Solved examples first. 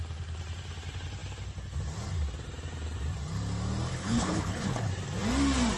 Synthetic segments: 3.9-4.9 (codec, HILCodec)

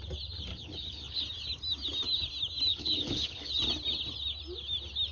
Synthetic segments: 0.5-1.2 (codec, HILCodec); 2.7-3.5